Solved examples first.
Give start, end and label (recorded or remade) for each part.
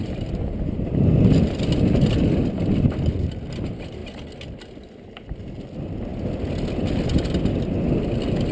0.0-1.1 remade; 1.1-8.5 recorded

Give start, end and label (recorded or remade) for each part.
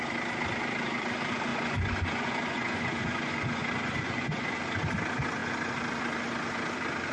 0.0-1.5 recorded; 1.5-4.5 remade; 4.5-7.1 recorded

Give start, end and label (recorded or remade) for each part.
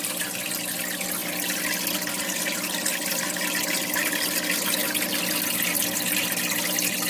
0.0-7.1 recorded